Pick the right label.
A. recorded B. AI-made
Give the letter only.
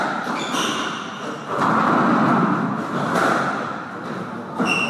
A